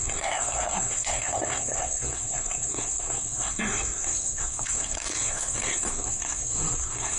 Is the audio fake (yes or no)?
yes